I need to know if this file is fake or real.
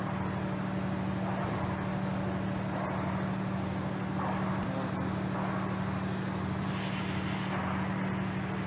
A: real